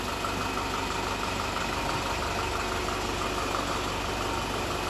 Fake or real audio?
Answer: real